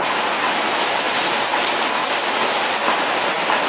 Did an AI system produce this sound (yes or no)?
no